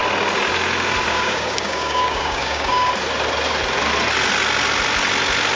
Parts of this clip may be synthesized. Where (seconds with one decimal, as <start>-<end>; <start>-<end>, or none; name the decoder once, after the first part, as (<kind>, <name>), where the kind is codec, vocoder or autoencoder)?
1.1-2.9 (codec, DAC)